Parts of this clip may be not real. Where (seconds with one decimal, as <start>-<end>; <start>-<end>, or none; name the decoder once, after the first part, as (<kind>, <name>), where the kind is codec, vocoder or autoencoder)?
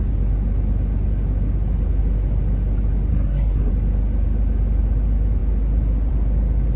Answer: 3.1-3.7 (codec, SNAC)